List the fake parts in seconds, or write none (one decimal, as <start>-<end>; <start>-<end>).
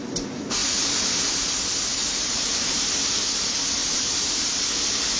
0.6-1.4; 1.9-2.8; 3.8-4.6